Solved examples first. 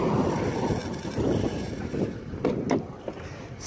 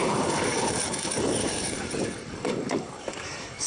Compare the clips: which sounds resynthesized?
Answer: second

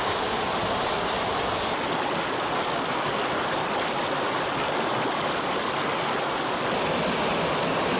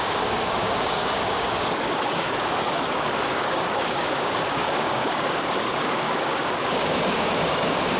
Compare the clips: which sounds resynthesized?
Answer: second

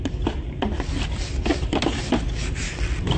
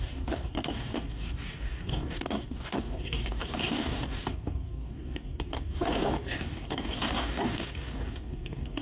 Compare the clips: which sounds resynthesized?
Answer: second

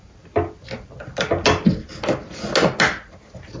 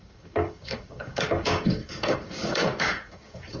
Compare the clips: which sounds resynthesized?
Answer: second